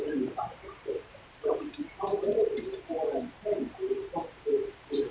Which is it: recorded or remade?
remade